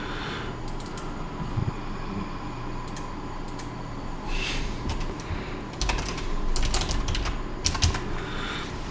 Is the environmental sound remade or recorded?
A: recorded